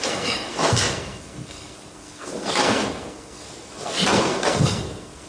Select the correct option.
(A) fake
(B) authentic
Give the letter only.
A